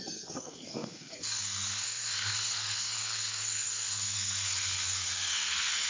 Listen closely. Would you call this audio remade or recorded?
remade